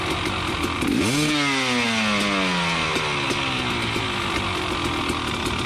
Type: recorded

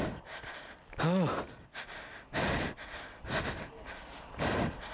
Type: recorded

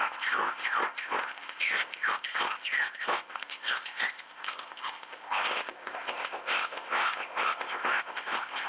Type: remade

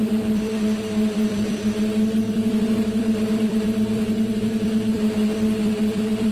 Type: remade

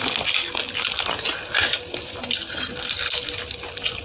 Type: recorded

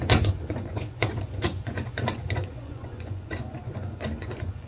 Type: remade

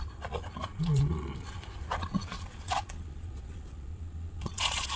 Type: remade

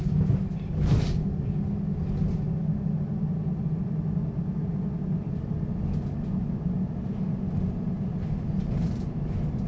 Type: recorded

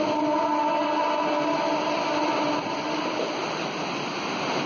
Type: recorded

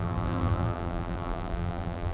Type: remade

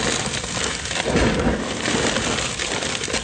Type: recorded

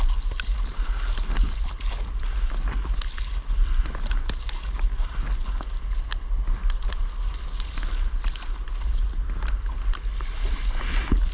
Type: recorded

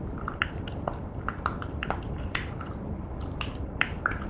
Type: remade